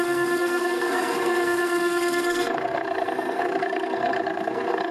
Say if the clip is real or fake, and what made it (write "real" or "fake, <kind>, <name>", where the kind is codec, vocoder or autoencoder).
fake, codec, SNAC